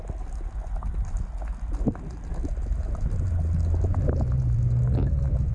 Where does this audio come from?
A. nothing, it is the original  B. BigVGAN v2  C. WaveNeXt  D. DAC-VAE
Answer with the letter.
A